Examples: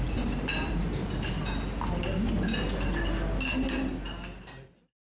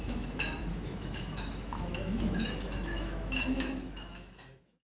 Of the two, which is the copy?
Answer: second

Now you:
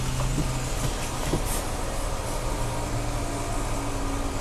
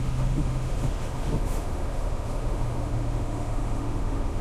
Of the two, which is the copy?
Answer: second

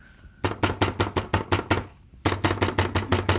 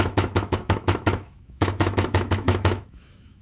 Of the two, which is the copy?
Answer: second